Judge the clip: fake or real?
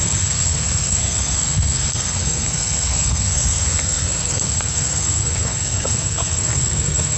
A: fake